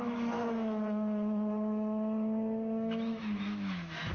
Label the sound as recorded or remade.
remade